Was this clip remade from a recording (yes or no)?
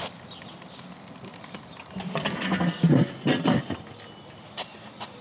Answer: no